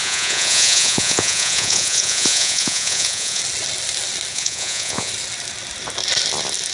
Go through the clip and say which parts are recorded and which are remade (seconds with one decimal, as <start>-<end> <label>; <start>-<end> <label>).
0.0-3.4 remade; 3.4-4.3 recorded; 4.3-5.1 remade; 5.1-6.7 recorded